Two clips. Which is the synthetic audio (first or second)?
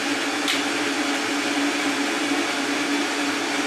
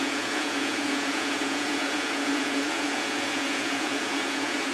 second